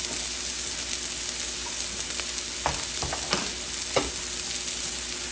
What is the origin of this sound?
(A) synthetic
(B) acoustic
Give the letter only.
B